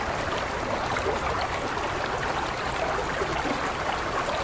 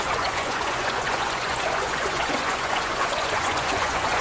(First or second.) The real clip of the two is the first